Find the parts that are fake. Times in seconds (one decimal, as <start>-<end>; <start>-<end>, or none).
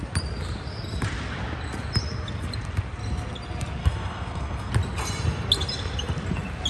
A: 3.8-4.7